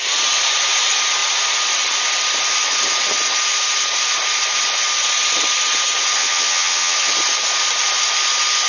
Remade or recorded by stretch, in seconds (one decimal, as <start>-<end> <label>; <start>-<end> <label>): 0.0-6.2 recorded; 6.2-7.1 remade; 7.1-8.7 recorded